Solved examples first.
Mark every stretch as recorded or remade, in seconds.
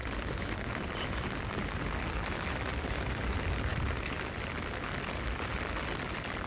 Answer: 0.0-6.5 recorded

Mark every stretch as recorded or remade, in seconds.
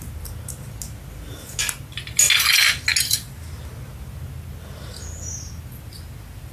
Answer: 0.0-6.5 recorded